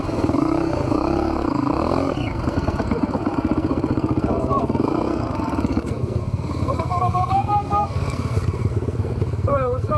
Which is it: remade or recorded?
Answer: remade